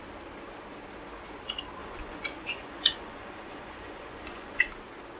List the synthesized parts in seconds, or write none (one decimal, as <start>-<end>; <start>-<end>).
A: 1.8-4.6